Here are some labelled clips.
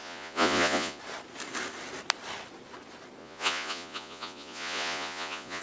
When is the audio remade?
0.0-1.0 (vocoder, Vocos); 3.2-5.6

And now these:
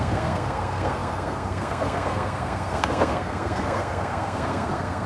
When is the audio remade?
0.0-5.1 (codec, SNAC)

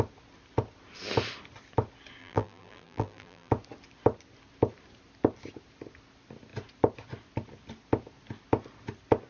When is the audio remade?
2.2-3.5 (vocoder, BigVGAN v2)

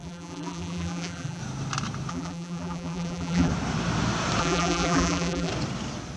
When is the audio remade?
0.0-1.4 (vocoder, BigVGAN v2); 2.1-3.5; 4.4-5.5

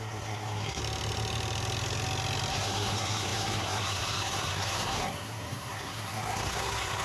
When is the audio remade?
0.0-0.8 (codec, SNAC); 2.5-7.0

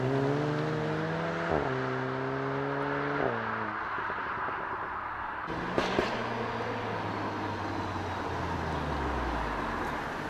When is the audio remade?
none

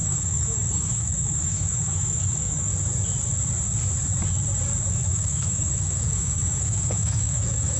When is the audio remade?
0.0-2.7 (autoencoder, DAC-VAE); 4.9-7.8